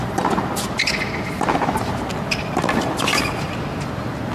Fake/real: real